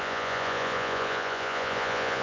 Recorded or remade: remade